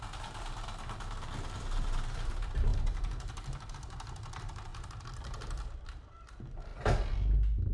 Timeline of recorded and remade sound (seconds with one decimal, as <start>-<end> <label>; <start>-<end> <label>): 0.0-2.7 remade; 2.7-3.7 recorded; 3.7-4.7 remade; 4.7-5.8 recorded; 5.8-6.7 remade; 6.7-7.7 recorded